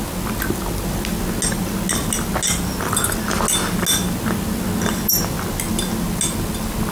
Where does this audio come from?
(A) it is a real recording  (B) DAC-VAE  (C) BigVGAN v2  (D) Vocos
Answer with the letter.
A